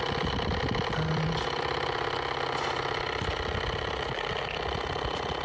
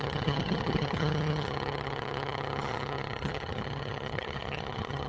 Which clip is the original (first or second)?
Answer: first